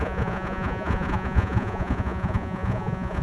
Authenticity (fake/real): fake